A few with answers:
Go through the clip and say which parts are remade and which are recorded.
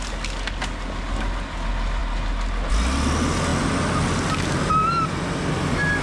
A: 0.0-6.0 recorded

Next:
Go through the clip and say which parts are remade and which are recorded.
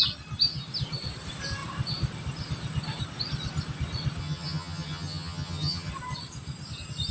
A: 0.0-4.2 recorded; 4.2-5.9 remade; 5.9-7.1 recorded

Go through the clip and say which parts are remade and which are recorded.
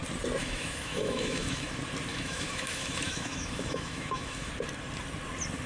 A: 0.0-0.4 recorded; 0.4-1.7 remade; 1.7-2.1 recorded; 2.1-4.5 remade; 4.5-5.7 recorded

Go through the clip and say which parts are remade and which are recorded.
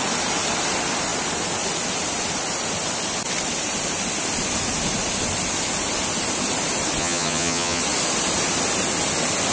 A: 0.0-7.0 recorded; 7.0-7.8 remade; 7.8-9.5 recorded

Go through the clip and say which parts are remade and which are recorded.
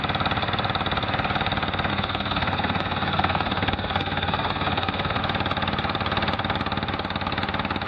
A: 0.0-1.9 recorded; 1.9-5.2 remade; 5.2-7.9 recorded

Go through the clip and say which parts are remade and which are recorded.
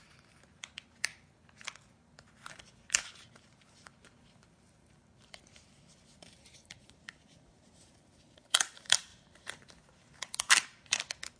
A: 0.0-1.1 remade; 1.1-1.9 recorded; 1.9-11.4 remade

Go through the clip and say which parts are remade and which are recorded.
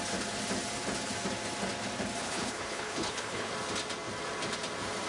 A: 0.0-2.2 recorded; 2.2-3.5 remade; 3.5-5.1 recorded